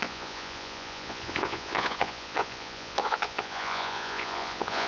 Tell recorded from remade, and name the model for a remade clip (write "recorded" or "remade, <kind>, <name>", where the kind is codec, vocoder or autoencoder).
remade, vocoder, Vocos